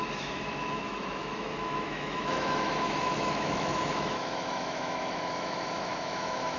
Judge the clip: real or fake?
fake